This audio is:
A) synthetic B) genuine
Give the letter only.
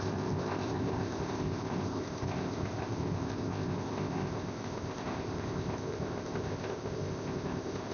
A